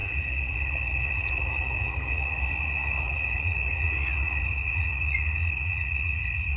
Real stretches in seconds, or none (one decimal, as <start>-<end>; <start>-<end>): none

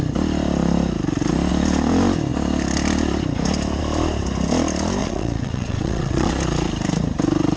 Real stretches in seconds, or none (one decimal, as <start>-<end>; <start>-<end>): 0.0-5.0; 6.3-7.6

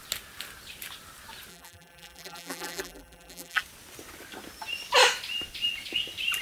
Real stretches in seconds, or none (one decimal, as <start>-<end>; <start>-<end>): 0.0-1.5; 3.6-6.4

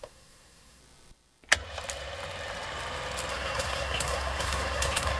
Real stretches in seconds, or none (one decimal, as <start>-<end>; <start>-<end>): 0.8-3.3

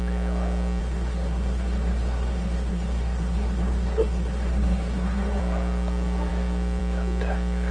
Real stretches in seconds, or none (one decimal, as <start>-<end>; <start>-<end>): 0.0-0.8; 5.4-7.7

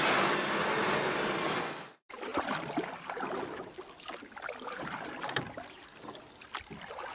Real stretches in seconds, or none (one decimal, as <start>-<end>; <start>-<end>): 0.0-7.1

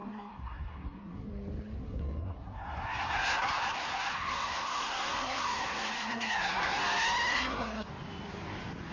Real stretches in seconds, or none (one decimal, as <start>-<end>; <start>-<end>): 1.3-1.8; 6.8-7.3; 7.9-8.9

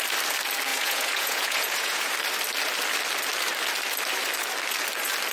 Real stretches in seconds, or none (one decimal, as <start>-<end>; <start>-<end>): 0.0-0.7; 2.1-5.3